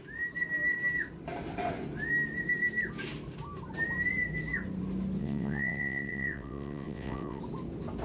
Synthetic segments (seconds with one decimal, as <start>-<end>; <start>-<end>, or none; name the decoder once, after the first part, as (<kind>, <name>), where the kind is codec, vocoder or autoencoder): 5.2-7.4 (vocoder, WaveNeXt)